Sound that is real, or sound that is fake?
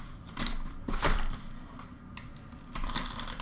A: fake